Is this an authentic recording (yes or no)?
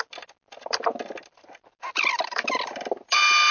yes